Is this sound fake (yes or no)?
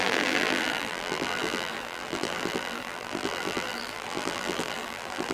yes